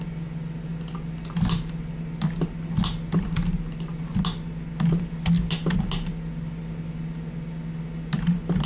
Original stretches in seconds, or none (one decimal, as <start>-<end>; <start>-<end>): 0.0-8.7